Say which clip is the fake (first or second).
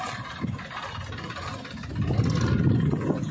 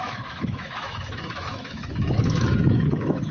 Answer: second